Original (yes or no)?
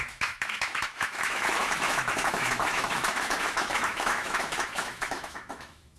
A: no